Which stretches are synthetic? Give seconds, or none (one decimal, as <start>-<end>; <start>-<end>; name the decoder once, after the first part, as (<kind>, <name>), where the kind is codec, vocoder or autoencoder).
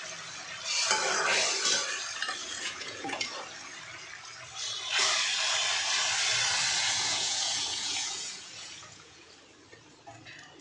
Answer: 2.4-3.2 (vocoder, Vocos); 6.8-9.3